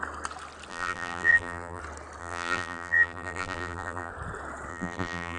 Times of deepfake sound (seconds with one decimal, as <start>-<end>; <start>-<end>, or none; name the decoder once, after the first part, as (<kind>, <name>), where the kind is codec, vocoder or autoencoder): 0.7-1.8 (vocoder, BigVGAN v2); 2.2-4.1; 4.7-5.4